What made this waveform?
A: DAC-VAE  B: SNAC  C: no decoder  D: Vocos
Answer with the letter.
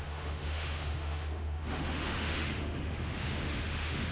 A